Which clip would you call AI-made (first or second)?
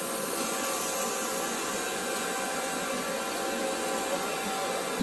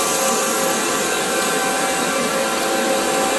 first